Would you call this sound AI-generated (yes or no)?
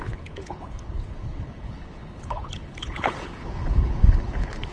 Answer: yes